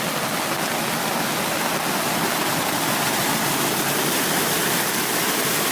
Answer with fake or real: real